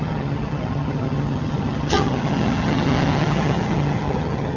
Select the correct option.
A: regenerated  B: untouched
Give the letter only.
A